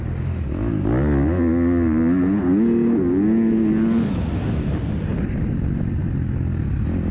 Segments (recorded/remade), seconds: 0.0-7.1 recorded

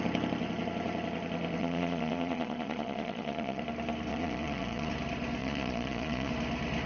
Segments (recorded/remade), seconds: 0.0-1.6 recorded; 1.6-3.6 remade; 3.6-4.1 recorded; 4.1-4.9 remade; 4.9-5.4 recorded; 5.4-6.3 remade; 6.3-6.9 recorded

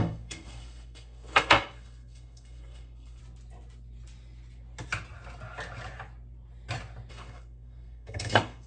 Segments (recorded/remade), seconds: 0.0-3.2 remade; 3.2-7.1 recorded; 7.1-8.7 remade

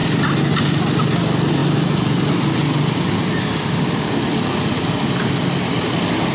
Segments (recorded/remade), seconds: 0.0-6.3 recorded

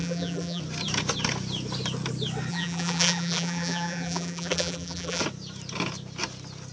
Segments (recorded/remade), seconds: 0.0-0.6 remade; 0.6-2.5 recorded; 2.5-5.2 remade; 5.2-6.7 recorded

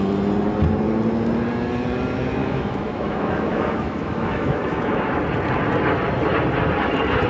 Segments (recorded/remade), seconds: 0.0-2.4 recorded; 2.4-5.2 remade; 5.2-7.3 recorded

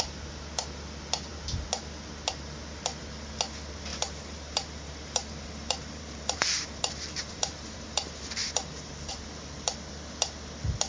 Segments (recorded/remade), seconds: 0.0-3.9 recorded; 3.9-9.1 remade; 9.1-10.9 recorded

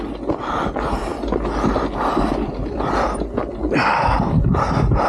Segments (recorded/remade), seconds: 0.0-5.1 recorded